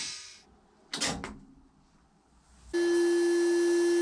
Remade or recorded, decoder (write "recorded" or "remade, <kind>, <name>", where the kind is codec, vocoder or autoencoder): recorded